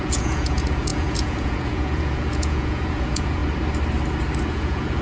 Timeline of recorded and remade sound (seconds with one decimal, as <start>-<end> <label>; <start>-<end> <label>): 0.0-3.4 remade; 3.4-4.5 recorded; 4.5-5.0 remade